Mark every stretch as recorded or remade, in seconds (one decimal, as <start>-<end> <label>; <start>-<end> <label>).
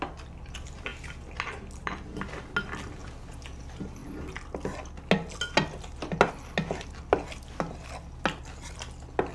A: 0.0-9.3 recorded